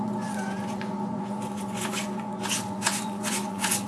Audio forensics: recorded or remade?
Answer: remade